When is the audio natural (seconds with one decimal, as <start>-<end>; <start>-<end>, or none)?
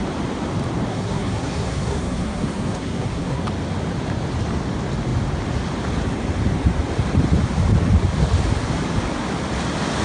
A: 0.0-0.9; 3.4-10.0